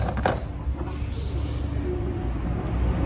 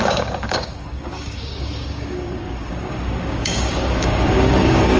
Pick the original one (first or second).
first